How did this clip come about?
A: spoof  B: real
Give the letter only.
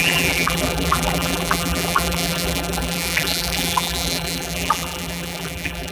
A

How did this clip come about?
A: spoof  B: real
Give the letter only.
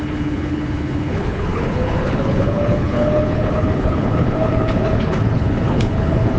A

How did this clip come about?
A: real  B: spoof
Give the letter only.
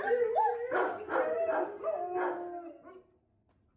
A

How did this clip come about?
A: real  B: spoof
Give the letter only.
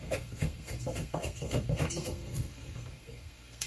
B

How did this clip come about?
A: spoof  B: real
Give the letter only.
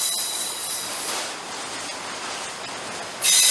B